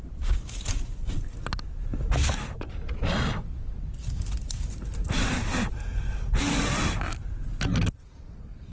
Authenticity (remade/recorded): recorded